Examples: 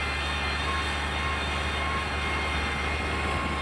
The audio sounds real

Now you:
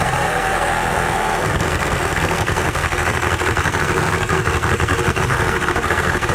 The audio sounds fake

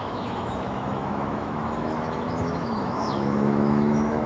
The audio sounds fake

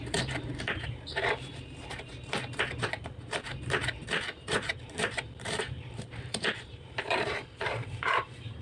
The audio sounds fake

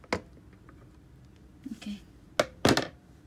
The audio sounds real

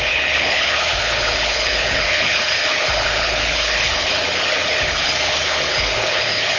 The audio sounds fake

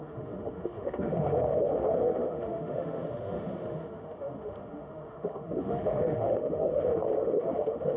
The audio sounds fake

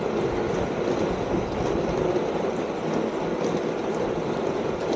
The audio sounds real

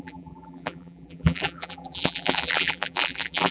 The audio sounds fake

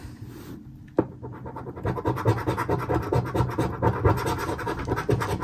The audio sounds real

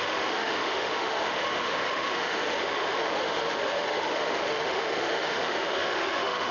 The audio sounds fake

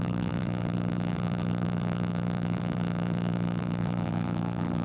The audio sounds fake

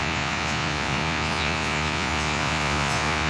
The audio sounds fake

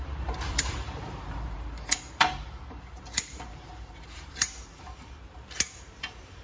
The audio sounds fake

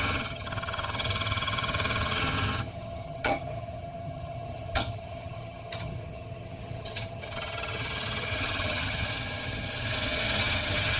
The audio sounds fake